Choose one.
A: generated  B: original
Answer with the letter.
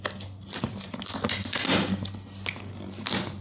B